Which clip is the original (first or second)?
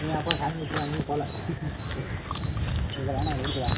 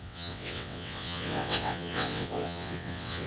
first